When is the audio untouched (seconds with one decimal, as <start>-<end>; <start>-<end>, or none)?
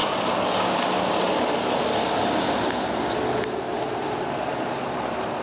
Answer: 0.0-3.7; 4.3-5.4